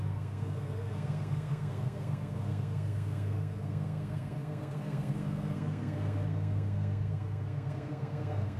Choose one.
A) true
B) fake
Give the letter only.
B